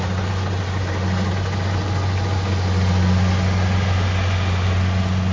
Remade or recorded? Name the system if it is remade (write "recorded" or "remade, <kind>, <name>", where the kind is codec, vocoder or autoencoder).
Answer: recorded